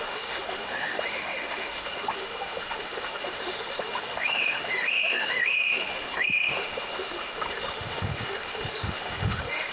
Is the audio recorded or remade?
remade